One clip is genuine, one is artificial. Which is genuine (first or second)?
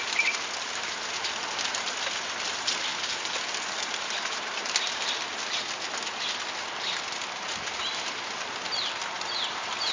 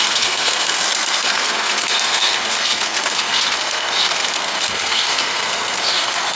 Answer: first